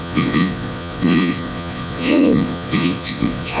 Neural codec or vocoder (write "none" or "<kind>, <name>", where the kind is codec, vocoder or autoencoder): vocoder, Vocos